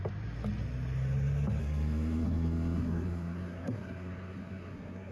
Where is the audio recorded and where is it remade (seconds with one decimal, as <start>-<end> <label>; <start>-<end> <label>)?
0.0-1.6 recorded; 1.6-5.1 remade